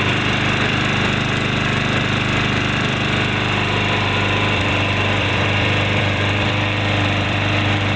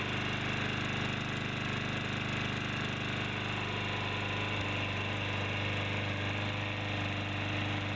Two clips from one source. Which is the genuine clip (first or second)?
second